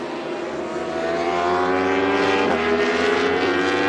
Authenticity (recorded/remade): recorded